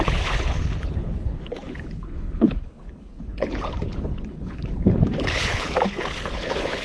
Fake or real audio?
fake